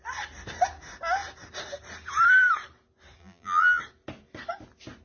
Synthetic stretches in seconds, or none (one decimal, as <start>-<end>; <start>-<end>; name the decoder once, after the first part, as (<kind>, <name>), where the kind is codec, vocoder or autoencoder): 3.2-3.8 (vocoder, BigVGAN v2)